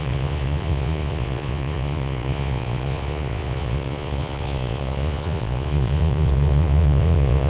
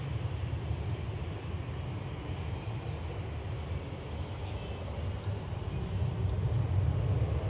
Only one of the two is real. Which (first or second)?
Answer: second